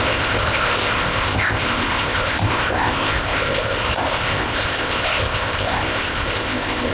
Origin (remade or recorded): remade